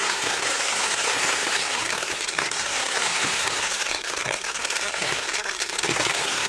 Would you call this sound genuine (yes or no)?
no